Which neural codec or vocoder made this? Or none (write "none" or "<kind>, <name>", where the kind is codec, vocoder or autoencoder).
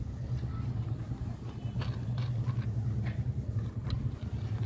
none